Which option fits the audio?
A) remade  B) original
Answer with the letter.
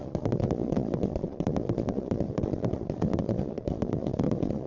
A